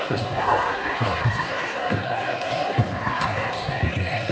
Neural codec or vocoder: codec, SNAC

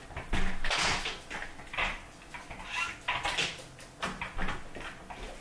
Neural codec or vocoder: none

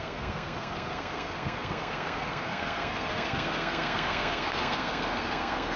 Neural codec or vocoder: codec, SNAC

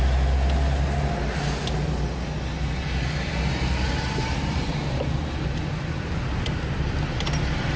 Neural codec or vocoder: none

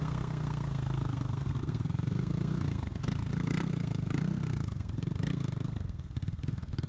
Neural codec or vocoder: codec, SNAC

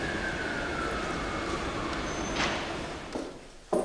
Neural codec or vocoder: none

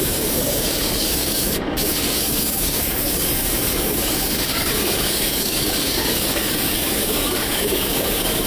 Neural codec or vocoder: codec, DAC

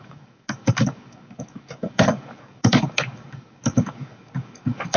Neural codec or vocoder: codec, DAC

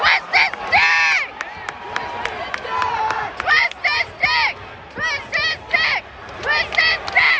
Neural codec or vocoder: none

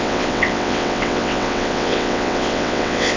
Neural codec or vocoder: vocoder, WaveNeXt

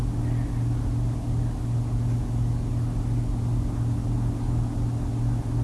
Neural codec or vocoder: none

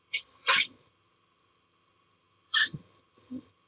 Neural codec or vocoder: vocoder, HiFi-GAN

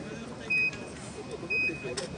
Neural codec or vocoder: none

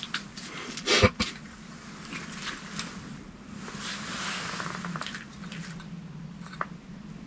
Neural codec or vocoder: none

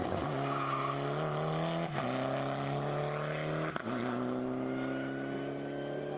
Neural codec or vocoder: none